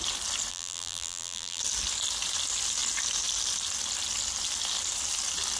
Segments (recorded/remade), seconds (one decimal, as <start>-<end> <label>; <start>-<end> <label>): 0.0-0.5 recorded; 0.5-1.6 remade; 1.6-5.6 recorded